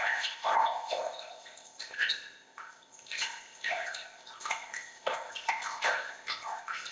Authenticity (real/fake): fake